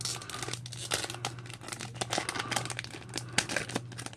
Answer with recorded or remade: recorded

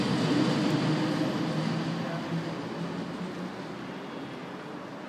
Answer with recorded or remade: recorded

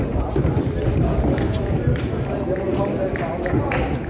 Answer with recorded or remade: recorded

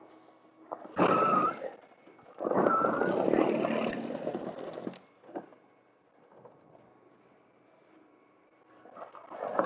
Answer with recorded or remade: recorded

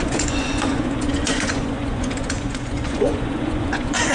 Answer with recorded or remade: remade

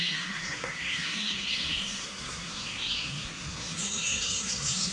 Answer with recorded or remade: remade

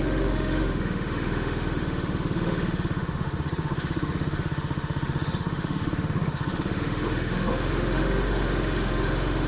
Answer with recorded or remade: remade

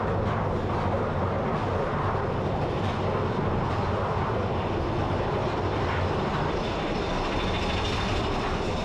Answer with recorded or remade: recorded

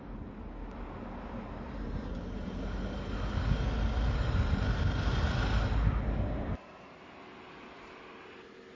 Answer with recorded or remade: recorded